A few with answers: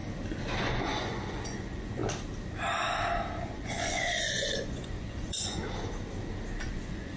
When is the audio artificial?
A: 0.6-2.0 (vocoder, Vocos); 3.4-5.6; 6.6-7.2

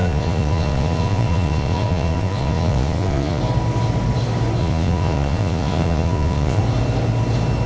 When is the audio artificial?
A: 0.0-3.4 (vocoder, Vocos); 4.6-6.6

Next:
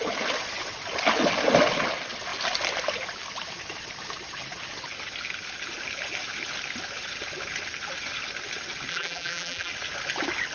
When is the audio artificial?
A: 8.9-9.7 (vocoder, BigVGAN v2)

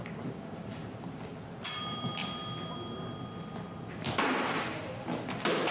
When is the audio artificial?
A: none

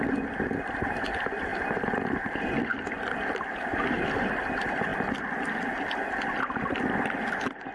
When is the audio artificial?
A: 1.5-2.0 (vocoder, BigVGAN v2)